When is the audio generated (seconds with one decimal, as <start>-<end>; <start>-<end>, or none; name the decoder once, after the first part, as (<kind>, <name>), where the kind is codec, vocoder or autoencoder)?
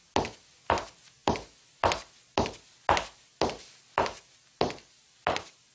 none